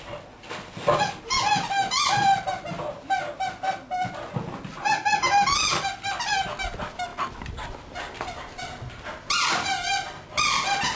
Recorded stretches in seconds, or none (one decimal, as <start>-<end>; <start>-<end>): 0.0-7.1

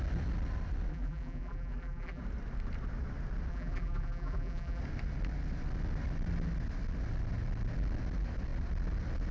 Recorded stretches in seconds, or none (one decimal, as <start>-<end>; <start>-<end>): 0.0-0.9; 2.2-3.5; 4.8-9.3

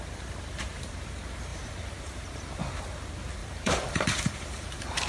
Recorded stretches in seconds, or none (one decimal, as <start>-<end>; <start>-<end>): 0.0-1.5; 2.4-3.4